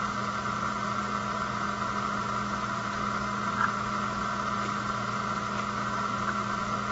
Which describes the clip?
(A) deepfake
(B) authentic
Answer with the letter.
B